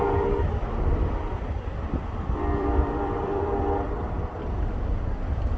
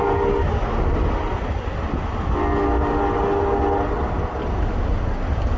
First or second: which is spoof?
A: first